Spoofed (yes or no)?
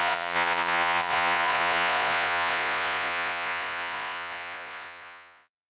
yes